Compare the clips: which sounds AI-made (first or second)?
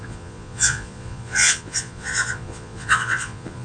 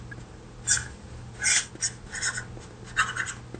first